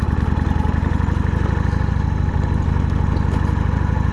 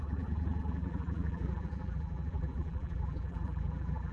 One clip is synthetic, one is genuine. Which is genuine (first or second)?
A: first